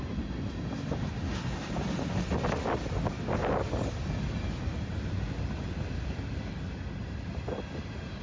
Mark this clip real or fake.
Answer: real